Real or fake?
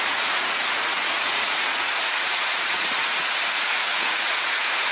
fake